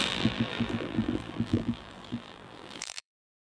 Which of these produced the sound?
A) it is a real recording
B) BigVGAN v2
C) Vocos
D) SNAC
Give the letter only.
B